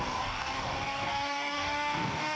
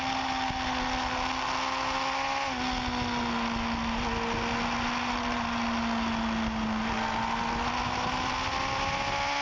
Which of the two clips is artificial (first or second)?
first